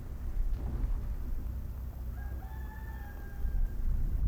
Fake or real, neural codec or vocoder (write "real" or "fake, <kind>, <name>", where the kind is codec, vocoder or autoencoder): real